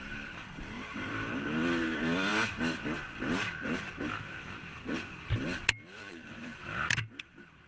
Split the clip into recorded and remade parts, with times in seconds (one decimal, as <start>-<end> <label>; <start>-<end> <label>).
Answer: 0.0-6.0 recorded; 6.0-6.6 remade; 6.6-7.7 recorded